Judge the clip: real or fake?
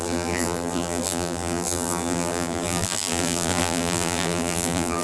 fake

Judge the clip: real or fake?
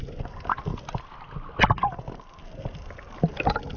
real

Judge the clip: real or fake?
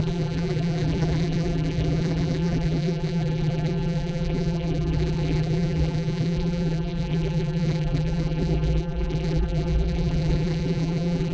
fake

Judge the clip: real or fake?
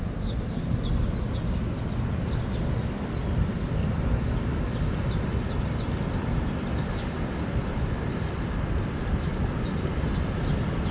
real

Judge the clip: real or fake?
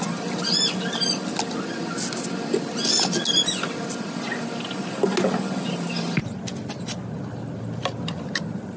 real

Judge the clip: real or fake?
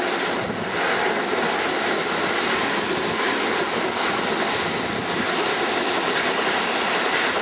real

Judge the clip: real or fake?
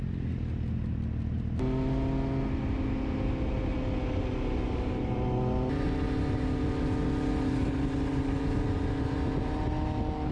real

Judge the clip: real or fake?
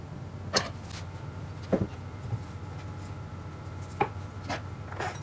real